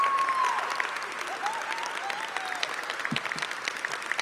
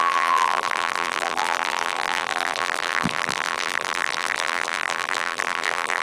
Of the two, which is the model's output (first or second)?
second